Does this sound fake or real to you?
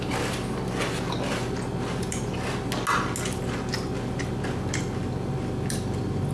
real